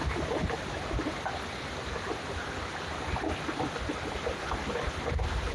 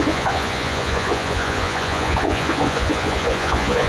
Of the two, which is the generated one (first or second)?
second